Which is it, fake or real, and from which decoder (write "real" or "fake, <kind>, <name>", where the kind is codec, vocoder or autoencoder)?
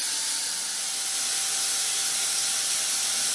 real